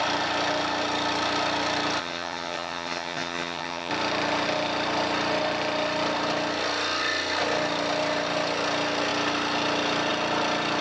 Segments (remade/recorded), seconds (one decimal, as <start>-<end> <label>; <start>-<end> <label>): 0.0-2.0 recorded; 2.0-3.9 remade; 3.9-10.8 recorded